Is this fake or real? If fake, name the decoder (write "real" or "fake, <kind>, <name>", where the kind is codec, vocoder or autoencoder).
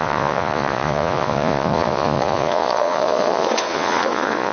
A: fake, vocoder, Vocos